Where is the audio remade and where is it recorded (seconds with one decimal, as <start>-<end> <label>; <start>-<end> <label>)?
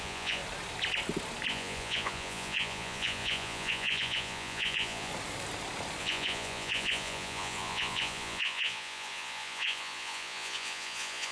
0.0-0.4 remade; 0.4-1.5 recorded; 1.5-5.1 remade; 5.1-6.0 recorded; 6.0-11.3 remade